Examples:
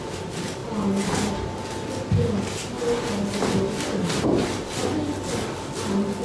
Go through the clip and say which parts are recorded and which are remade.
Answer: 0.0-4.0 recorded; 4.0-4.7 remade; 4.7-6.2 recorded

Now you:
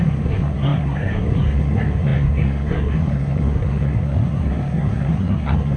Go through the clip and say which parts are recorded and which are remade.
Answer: 0.0-5.8 remade

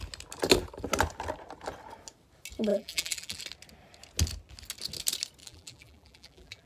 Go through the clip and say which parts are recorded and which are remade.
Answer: 0.0-2.7 recorded; 2.7-3.4 remade; 3.4-5.4 recorded; 5.4-6.7 remade

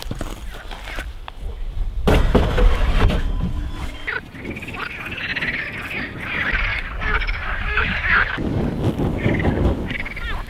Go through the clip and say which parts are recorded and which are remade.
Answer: 0.0-6.7 recorded; 6.7-8.6 remade; 8.6-9.1 recorded; 9.1-10.1 remade; 10.1-10.5 recorded

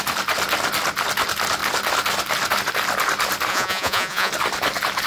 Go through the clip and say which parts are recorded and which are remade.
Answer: 0.0-3.5 recorded; 3.5-4.3 remade; 4.3-5.1 recorded